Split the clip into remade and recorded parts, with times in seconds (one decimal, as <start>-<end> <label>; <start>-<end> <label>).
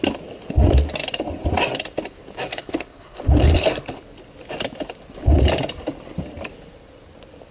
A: 0.0-2.5 recorded; 2.5-4.0 remade; 4.0-7.5 recorded